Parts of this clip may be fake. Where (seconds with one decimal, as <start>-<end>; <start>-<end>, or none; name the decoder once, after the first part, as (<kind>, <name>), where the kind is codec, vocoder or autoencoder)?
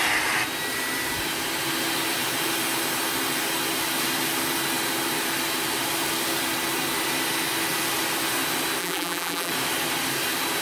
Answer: 8.8-9.5 (vocoder, BigVGAN v2)